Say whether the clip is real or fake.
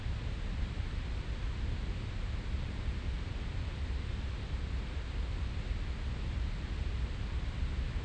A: real